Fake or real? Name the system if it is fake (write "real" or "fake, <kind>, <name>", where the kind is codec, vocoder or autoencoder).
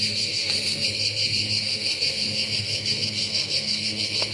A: fake, codec, SNAC